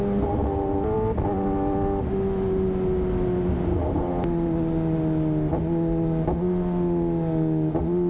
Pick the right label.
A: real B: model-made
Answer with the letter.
A